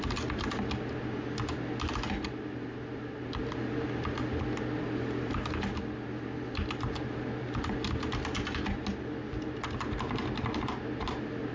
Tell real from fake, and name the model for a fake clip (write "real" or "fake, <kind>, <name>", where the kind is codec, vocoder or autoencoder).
real